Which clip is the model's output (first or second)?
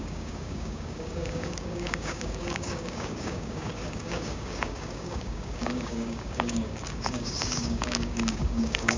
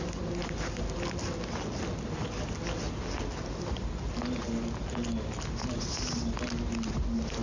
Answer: first